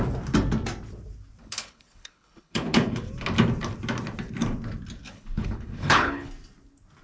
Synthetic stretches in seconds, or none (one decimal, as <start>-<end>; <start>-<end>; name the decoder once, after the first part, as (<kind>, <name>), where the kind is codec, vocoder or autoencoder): 1.4-3.0 (codec, HILCodec); 5.0-6.3